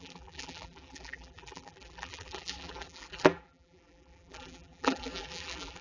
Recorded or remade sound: remade